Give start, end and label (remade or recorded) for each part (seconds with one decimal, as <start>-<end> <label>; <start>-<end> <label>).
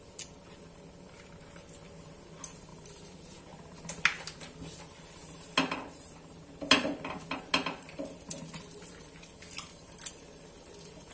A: 0.0-11.1 recorded